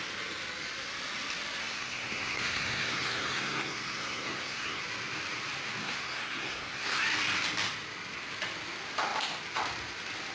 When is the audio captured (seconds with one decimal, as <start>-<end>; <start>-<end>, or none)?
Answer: 0.0-1.6; 4.8-5.8; 7.0-10.3